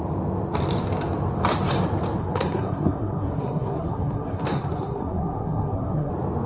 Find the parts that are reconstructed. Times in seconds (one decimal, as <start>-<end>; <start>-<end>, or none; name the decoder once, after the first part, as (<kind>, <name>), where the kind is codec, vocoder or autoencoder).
2.2-6.1 (codec, SNAC)